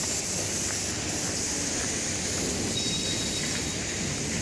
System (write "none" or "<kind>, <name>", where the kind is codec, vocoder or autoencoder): none